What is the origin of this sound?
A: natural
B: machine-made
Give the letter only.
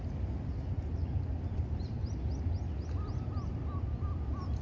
A